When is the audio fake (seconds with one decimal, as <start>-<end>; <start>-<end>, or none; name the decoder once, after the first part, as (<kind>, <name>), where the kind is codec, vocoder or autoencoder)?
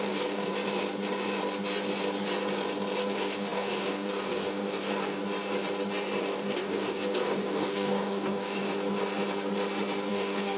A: 0.0-0.5 (codec, DAC); 3.0-5.2; 6.2-8.6; 10.1-10.6